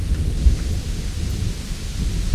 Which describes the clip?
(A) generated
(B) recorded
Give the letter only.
B